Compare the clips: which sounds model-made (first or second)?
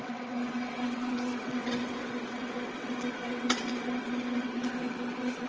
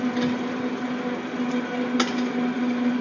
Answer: first